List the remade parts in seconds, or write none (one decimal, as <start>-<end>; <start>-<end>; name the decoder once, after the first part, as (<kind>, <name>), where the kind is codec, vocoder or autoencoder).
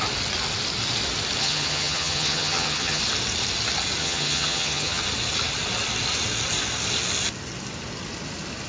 1.4-3.0 (vocoder, HiFi-GAN); 4.0-5.0